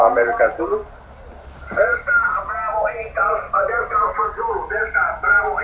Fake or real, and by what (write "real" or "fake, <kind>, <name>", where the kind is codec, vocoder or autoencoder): real